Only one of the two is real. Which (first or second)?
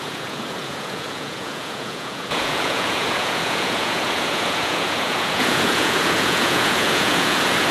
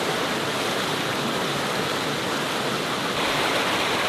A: second